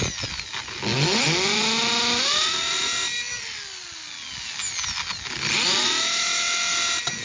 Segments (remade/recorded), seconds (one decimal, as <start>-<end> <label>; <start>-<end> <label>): 0.0-7.2 recorded

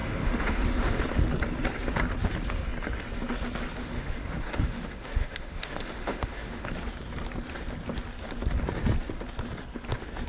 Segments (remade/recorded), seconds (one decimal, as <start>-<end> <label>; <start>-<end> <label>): 0.0-1.0 remade; 1.0-3.8 recorded; 3.8-6.7 remade; 6.7-10.3 recorded

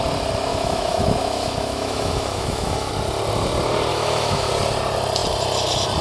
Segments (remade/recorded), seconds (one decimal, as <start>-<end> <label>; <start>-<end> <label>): 0.0-0.5 recorded; 0.5-2.9 remade; 2.9-3.9 recorded; 3.9-4.5 remade; 4.5-6.0 recorded

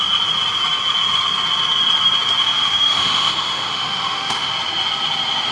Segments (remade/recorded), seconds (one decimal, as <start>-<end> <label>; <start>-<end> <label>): 0.0-2.4 recorded; 2.4-4.5 remade; 4.5-5.5 recorded

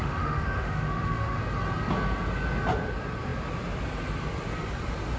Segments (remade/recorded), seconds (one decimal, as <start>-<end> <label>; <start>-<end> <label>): 0.0-1.4 remade; 1.4-5.2 recorded

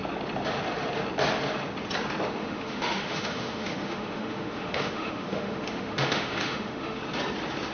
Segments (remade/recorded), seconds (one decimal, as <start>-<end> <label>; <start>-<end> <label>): 0.0-2.4 recorded; 2.4-7.0 remade; 7.0-7.7 recorded

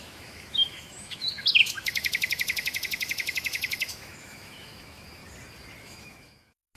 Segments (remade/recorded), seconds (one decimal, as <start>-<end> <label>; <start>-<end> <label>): 0.0-5.2 remade; 5.2-5.8 recorded; 5.8-6.8 remade